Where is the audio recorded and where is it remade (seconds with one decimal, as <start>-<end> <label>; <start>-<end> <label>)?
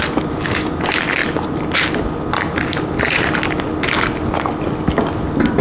0.0-5.6 recorded